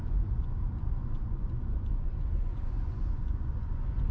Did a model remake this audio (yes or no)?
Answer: yes